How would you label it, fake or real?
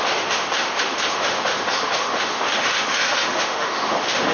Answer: fake